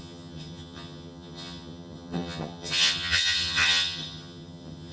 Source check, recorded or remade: remade